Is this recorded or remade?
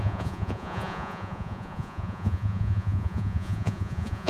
remade